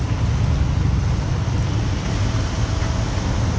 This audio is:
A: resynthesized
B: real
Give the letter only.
B